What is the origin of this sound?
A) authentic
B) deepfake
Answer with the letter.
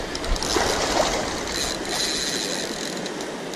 A